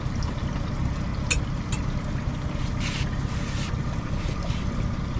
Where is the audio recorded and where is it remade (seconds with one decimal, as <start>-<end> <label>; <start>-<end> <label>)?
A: 0.0-5.2 recorded

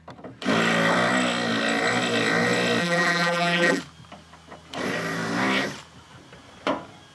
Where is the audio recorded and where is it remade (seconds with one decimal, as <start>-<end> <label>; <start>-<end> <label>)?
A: 0.0-2.8 recorded; 2.8-3.8 remade; 3.8-7.1 recorded

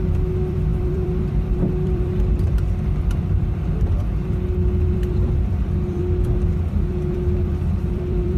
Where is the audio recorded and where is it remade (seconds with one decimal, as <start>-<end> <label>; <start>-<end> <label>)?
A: 0.0-6.0 remade; 6.0-6.9 recorded; 6.9-8.4 remade

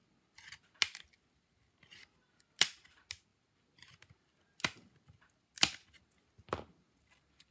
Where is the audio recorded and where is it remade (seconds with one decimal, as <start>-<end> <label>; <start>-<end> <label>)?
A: 0.0-7.5 recorded

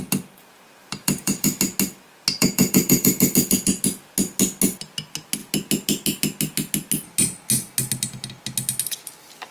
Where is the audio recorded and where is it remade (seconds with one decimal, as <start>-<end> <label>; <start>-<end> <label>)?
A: 0.0-0.8 recorded; 0.8-1.6 remade; 1.6-2.4 recorded; 2.4-3.1 remade; 3.1-9.5 recorded

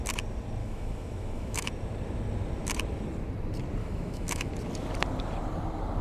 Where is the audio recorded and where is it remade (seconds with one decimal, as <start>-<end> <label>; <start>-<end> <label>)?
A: 0.0-0.6 recorded; 0.6-1.7 remade; 1.7-3.8 recorded; 3.8-4.5 remade; 4.5-6.0 recorded